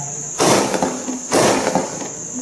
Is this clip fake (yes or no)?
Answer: no